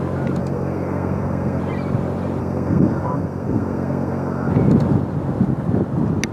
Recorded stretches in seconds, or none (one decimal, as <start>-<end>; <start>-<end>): 0.0-0.4; 1.6-2.4; 4.5-6.3